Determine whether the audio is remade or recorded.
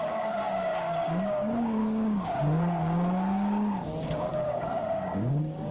remade